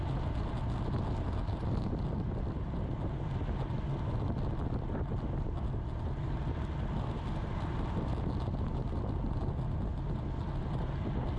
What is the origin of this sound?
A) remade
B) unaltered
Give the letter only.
B